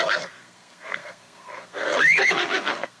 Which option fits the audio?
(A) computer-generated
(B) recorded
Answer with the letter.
A